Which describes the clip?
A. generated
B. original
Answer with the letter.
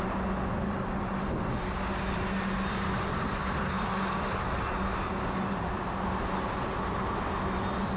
B